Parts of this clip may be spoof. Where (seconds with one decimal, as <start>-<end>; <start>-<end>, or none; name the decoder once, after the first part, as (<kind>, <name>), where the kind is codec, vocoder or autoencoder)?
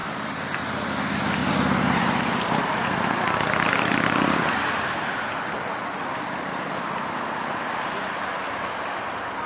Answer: 0.0-0.6 (vocoder, BigVGAN v2); 1.4-3.2; 3.7-6.8